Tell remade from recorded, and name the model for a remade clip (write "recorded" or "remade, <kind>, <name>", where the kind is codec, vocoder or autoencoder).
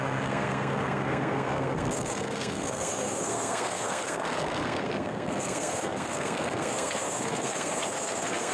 remade, codec, SNAC